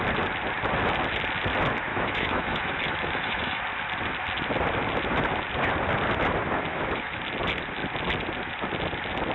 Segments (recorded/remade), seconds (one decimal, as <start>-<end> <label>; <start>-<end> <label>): 0.0-1.9 recorded; 1.9-3.6 remade; 3.6-6.7 recorded; 6.7-7.2 remade; 7.2-9.3 recorded